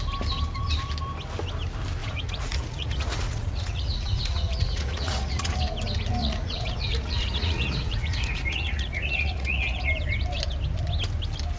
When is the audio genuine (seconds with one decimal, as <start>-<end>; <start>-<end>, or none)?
0.0-2.0; 5.6-6.2; 9.9-11.6